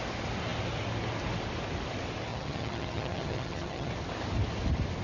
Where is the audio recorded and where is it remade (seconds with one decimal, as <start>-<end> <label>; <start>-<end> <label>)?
0.0-2.3 recorded; 2.3-3.9 remade; 3.9-5.0 recorded